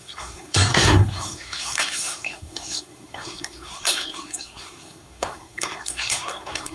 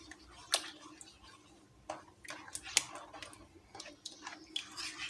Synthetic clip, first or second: first